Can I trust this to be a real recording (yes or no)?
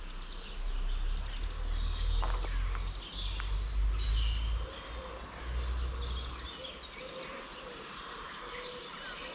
yes